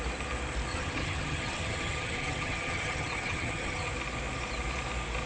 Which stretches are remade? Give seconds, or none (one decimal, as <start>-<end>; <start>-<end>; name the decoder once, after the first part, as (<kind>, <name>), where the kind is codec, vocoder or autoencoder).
0.7-3.9 (vocoder, HiFi-GAN)